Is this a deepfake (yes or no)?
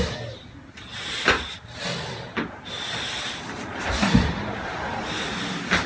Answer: no